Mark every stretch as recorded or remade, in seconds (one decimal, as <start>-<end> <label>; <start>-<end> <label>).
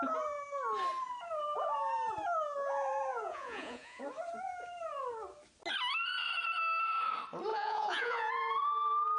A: 0.0-3.1 recorded; 3.1-4.0 remade; 4.0-7.5 recorded; 7.5-8.3 remade; 8.3-9.2 recorded